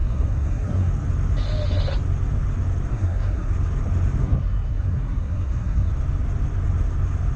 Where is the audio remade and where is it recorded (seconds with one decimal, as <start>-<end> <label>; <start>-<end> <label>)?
0.0-0.9 remade; 0.9-2.9 recorded; 2.9-3.5 remade; 3.5-4.2 recorded; 4.2-5.9 remade; 5.9-7.4 recorded